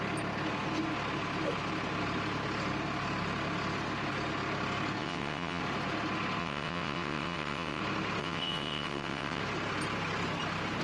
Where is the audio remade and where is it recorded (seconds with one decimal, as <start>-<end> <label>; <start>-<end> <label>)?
0.0-5.0 recorded; 5.0-5.6 remade; 5.6-6.4 recorded; 6.4-7.8 remade; 7.8-8.2 recorded; 8.2-9.4 remade; 9.4-10.8 recorded